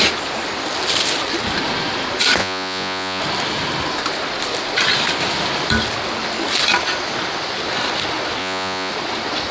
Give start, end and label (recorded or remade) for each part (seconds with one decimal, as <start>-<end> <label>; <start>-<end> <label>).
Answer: 0.0-2.4 recorded; 2.4-3.2 remade; 3.2-8.4 recorded; 8.4-8.9 remade; 8.9-9.5 recorded